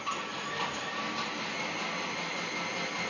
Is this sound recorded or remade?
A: recorded